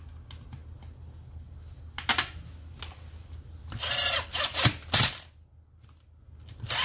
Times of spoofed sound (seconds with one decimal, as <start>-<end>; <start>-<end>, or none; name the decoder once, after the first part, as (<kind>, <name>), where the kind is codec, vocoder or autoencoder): none